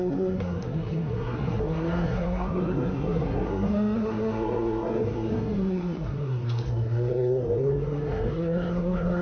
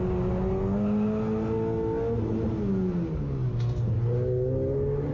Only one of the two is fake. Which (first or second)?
first